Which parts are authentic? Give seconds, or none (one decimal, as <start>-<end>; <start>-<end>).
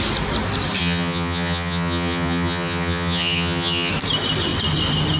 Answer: 0.0-0.8; 3.9-5.2